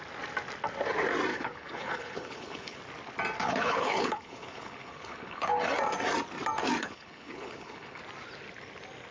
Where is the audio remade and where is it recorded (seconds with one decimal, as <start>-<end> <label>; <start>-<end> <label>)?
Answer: 0.0-1.3 recorded; 1.3-2.8 remade; 2.8-3.4 recorded; 3.4-5.6 remade; 5.6-6.8 recorded; 6.8-8.0 remade; 8.0-9.1 recorded